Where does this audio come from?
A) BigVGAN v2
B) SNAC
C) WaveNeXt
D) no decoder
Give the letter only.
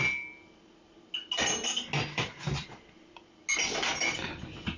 D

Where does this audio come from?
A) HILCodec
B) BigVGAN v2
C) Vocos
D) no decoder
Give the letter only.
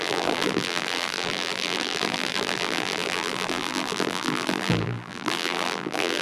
B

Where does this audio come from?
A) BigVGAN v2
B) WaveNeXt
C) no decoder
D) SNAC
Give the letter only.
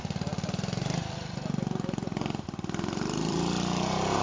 A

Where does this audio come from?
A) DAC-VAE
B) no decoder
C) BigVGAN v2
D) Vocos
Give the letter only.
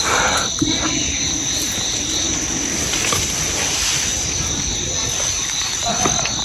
B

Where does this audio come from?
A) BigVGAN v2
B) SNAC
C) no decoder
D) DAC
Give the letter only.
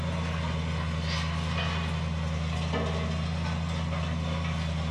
C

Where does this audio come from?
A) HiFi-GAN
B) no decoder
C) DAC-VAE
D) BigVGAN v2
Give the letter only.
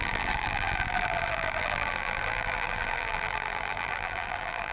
D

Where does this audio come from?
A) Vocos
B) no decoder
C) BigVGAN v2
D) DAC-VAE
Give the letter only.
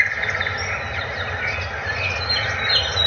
B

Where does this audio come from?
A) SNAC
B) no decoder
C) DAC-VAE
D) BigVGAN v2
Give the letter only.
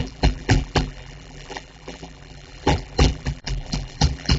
D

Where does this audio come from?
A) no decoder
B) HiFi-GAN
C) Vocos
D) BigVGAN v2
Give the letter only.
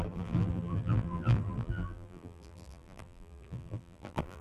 D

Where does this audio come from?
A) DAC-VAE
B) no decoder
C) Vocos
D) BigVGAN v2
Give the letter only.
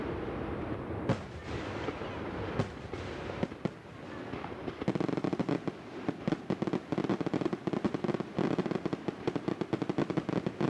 B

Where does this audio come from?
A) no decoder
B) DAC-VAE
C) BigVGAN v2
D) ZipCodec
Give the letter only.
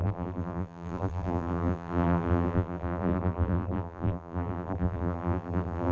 C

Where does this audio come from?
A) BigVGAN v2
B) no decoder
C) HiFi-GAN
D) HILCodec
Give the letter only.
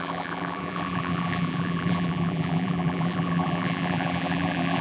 A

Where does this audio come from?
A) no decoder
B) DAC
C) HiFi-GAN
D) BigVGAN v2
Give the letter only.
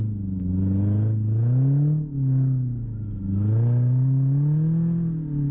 A